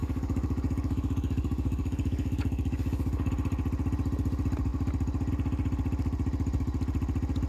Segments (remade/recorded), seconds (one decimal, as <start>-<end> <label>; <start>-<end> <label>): 0.0-3.3 remade; 3.3-7.5 recorded